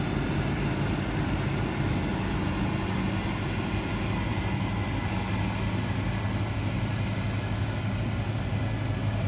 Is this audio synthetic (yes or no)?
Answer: no